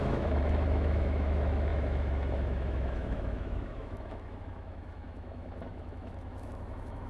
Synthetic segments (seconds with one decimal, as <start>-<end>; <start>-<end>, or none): 0.0-7.1